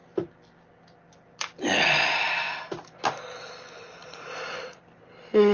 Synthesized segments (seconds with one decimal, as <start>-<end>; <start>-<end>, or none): 4.0-4.8